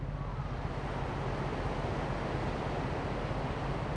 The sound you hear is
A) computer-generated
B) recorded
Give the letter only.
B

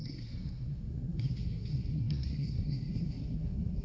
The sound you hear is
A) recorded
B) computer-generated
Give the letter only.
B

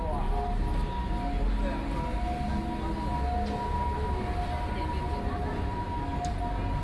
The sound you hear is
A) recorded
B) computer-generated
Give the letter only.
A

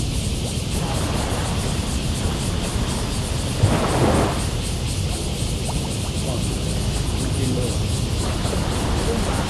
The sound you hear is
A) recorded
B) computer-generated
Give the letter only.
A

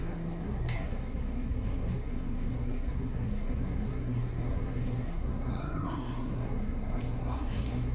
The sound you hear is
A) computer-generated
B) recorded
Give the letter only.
A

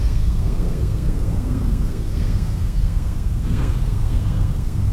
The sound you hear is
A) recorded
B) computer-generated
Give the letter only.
B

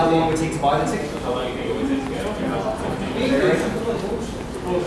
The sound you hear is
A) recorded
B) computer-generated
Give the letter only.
A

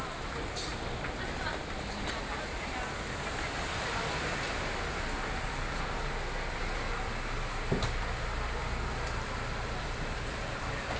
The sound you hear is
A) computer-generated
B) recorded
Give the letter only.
B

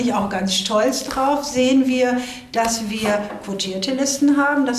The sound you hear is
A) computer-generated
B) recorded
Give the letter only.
B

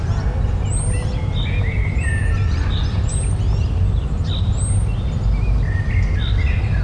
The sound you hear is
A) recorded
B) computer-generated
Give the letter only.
A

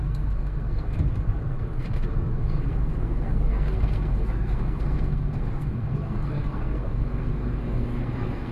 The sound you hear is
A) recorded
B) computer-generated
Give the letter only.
B